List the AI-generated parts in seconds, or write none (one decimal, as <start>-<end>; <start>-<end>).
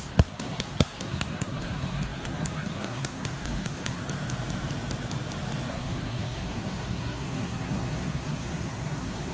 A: 0.0-4.0; 5.7-9.3